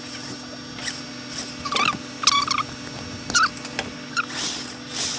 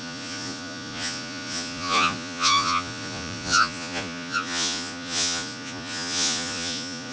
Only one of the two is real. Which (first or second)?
first